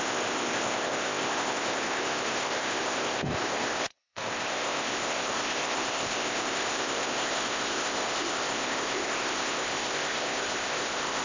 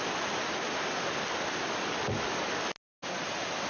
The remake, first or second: first